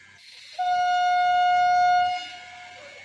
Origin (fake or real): real